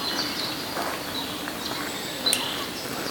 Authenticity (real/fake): real